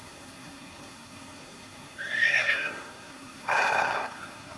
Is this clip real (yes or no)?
no